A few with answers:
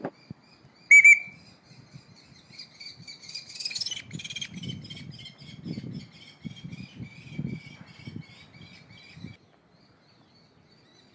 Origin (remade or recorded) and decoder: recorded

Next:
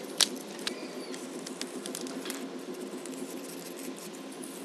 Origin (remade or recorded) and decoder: recorded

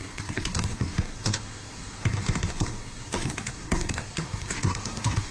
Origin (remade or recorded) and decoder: remade, codec, SNAC